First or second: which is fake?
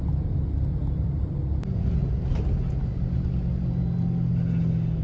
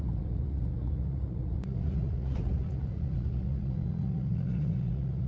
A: second